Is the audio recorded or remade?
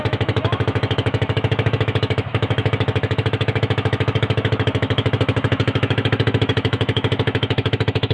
remade